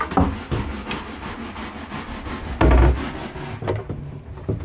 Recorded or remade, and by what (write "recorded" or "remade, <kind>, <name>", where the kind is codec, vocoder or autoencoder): recorded